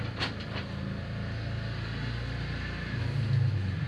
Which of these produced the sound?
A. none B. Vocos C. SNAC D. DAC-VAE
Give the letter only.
A